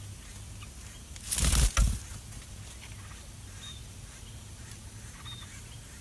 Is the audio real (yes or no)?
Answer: yes